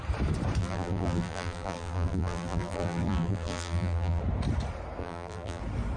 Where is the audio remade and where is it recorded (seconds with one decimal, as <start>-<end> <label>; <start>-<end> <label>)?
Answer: 0.0-0.6 recorded; 0.6-4.2 remade; 4.2-5.0 recorded; 5.0-5.6 remade; 5.6-6.0 recorded